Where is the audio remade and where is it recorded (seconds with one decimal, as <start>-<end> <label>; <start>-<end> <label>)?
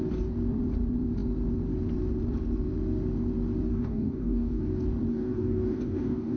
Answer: 0.0-3.7 recorded; 3.7-4.6 remade; 4.6-5.1 recorded; 5.1-6.4 remade